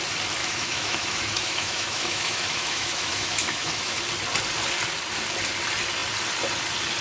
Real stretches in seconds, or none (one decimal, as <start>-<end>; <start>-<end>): 0.0-0.4; 4.0-7.0